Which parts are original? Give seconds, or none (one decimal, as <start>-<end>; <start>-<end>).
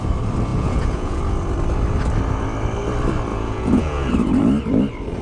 0.0-0.5; 1.2-3.3; 4.1-5.2